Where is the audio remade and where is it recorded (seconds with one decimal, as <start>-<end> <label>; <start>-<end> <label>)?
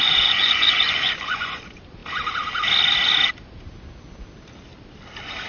0.0-1.6 remade; 1.6-5.5 recorded